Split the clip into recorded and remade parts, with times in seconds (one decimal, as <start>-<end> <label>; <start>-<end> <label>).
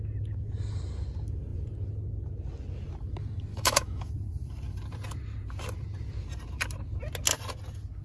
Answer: 0.0-3.5 recorded; 3.5-4.1 remade; 4.1-8.0 recorded